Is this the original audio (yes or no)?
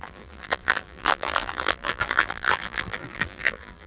no